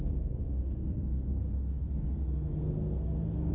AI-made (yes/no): yes